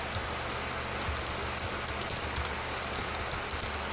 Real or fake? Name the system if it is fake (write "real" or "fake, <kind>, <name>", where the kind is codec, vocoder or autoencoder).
real